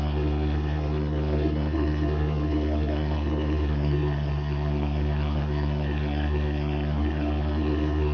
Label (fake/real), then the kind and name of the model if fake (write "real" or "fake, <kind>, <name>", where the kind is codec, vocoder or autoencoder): fake, codec, SNAC